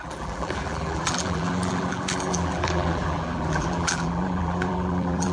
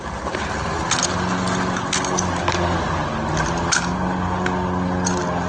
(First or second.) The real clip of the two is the second